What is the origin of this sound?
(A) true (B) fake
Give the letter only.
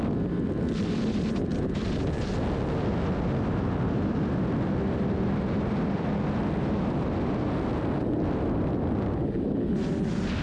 A